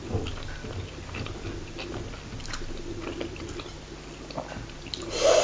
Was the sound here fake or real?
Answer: real